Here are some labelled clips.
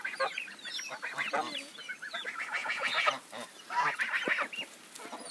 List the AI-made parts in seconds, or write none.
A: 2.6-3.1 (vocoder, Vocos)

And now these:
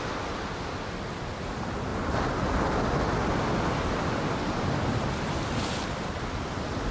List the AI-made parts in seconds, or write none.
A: none

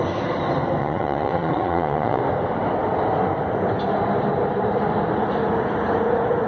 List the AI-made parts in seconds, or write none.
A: 0.8-2.2 (vocoder, Vocos)